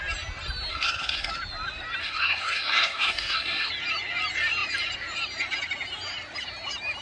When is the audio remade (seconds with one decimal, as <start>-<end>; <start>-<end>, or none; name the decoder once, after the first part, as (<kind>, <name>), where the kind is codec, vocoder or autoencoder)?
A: 0.7-1.3 (codec, SNAC); 2.0-3.7